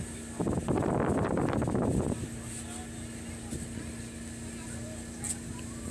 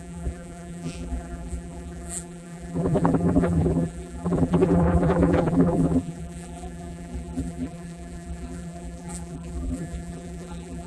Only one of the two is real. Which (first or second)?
first